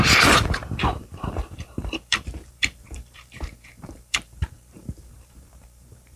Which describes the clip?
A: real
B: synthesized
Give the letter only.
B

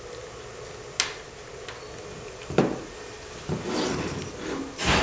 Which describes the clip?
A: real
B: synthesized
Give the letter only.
A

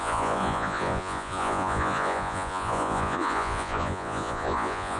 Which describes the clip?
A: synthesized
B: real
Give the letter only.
A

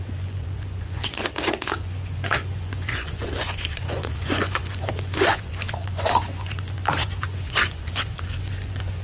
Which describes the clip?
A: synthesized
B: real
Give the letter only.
A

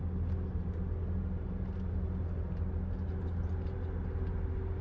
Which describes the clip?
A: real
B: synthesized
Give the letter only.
A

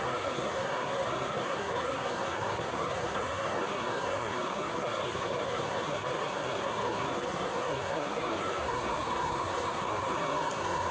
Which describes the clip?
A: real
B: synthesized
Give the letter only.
B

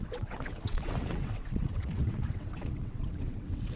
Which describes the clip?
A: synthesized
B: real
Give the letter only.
A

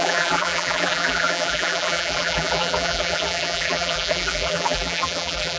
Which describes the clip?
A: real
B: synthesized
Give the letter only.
B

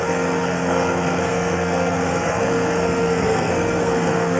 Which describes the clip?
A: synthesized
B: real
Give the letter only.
A